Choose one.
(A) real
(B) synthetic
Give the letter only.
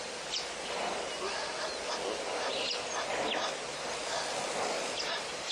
A